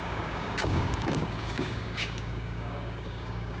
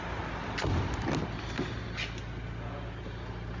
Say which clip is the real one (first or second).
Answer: second